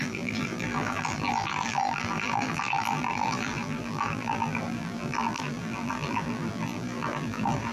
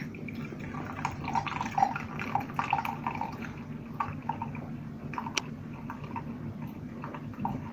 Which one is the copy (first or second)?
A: first